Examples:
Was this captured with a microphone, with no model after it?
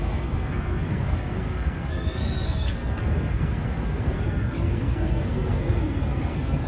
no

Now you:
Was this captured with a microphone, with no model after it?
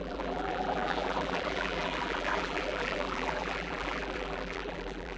no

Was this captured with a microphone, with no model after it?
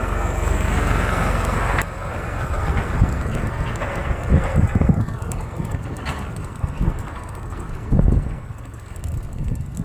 no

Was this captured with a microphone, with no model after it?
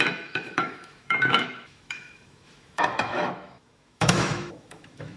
no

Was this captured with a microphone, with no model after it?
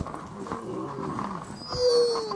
yes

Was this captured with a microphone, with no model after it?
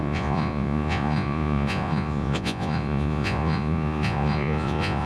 no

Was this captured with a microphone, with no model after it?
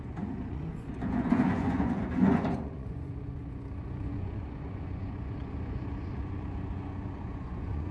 no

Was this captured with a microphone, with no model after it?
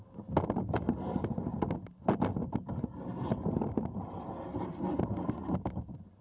yes